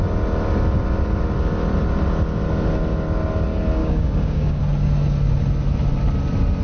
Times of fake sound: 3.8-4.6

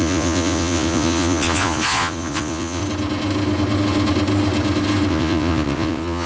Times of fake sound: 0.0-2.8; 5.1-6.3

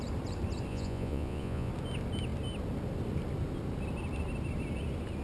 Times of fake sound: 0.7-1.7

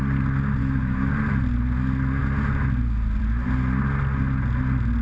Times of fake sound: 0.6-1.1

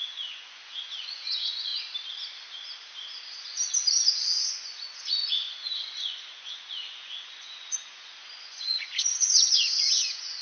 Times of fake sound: 0.0-1.7; 4.4-10.4